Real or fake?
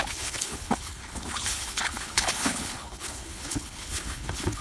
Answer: fake